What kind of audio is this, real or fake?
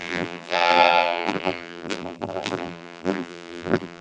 fake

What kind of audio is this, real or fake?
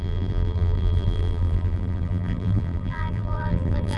fake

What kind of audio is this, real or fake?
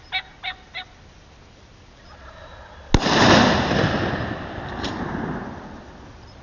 real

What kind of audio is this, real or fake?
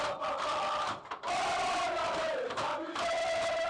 real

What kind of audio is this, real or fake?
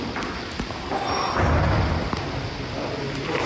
real